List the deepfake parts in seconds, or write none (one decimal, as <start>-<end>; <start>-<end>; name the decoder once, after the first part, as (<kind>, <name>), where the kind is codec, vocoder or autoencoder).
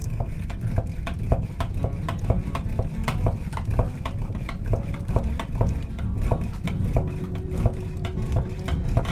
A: 0.0-0.6 (codec, SNAC)